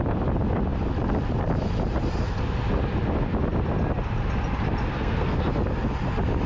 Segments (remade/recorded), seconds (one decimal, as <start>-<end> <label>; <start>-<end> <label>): 0.0-4.9 recorded; 4.9-5.4 remade; 5.4-6.5 recorded